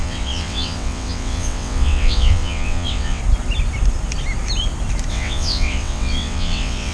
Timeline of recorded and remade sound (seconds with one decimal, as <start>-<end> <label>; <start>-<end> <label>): 0.0-3.2 remade; 3.2-5.1 recorded; 5.1-6.9 remade